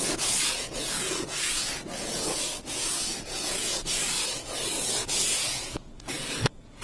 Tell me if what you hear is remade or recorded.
remade